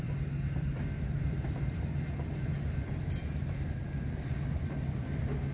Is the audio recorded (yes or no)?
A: no